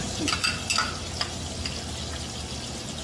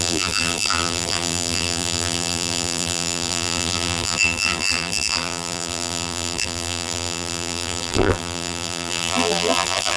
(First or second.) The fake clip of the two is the second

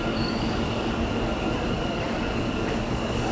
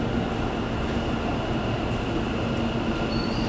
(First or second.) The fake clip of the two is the first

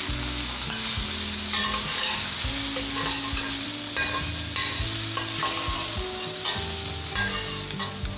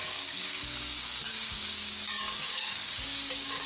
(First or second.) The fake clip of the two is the second